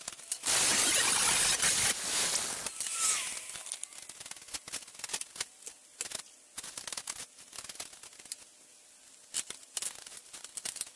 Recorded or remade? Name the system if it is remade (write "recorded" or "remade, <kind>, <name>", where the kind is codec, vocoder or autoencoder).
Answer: recorded